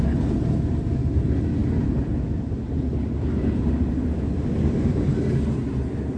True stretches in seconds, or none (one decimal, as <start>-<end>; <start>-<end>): 0.0-6.2